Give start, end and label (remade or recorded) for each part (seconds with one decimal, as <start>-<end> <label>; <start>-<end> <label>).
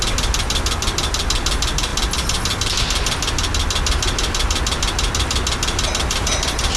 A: 0.0-6.8 recorded